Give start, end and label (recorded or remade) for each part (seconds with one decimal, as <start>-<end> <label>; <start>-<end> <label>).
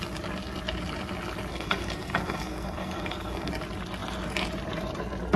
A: 0.0-1.5 recorded; 1.5-3.5 remade; 3.5-5.4 recorded